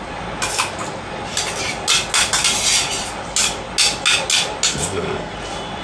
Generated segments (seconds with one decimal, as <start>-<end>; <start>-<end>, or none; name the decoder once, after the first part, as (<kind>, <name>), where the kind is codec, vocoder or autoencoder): 4.7-5.3 (codec, SNAC)